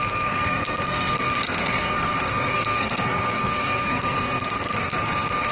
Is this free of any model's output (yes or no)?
no